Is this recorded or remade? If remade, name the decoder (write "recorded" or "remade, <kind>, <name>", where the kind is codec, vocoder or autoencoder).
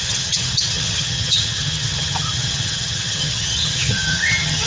remade, vocoder, HiFi-GAN